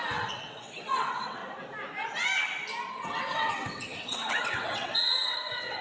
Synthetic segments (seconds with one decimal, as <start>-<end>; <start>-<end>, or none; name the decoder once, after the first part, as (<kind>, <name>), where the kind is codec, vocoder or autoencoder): 0.0-1.4 (vocoder, WaveNeXt); 2.9-5.8